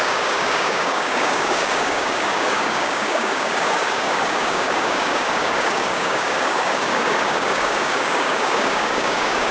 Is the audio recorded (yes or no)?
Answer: no